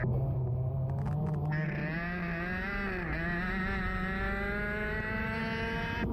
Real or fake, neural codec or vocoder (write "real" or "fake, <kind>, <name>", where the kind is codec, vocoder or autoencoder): real